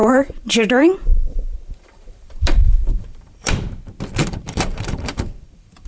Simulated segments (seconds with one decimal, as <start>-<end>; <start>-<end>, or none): 0.0-3.5; 4.2-5.9